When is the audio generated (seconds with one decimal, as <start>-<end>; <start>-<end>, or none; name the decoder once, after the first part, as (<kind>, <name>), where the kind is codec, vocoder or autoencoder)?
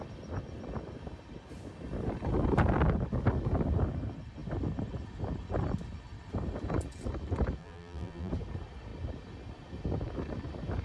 7.6-8.3 (vocoder, BigVGAN v2)